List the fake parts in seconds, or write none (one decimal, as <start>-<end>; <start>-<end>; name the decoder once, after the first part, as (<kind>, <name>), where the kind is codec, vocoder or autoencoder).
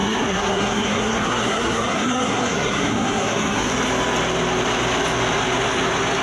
0.0-3.7 (codec, SNAC)